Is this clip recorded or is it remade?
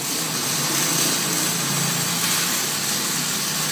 recorded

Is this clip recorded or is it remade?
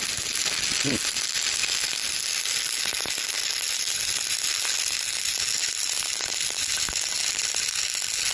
recorded